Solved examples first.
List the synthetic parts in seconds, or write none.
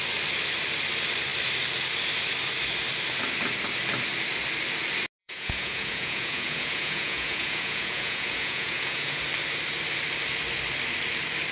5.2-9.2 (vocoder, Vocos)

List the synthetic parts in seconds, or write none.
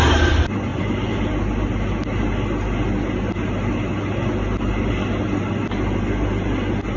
none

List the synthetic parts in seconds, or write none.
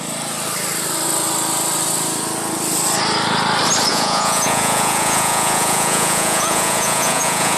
3.9-7.6 (vocoder, Vocos)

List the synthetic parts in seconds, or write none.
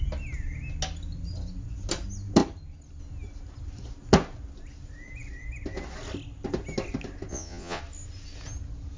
7.3-7.8 (vocoder, Vocos)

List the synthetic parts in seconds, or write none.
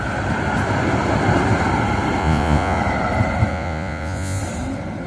2.2-2.8 (vocoder, Vocos); 3.5-4.4